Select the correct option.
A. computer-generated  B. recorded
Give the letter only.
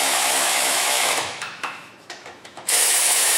A